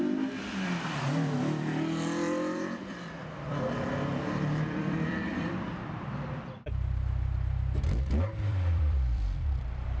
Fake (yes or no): yes